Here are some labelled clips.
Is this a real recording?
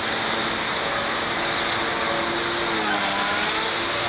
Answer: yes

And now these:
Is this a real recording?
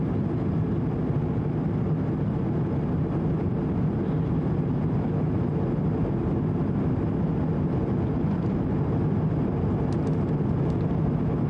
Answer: yes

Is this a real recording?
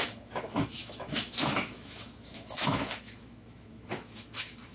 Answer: no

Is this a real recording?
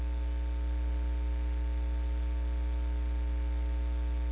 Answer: yes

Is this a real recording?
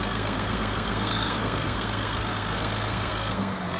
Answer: no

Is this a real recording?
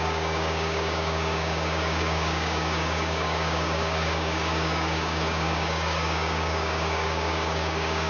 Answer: no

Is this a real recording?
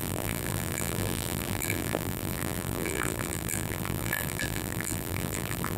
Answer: no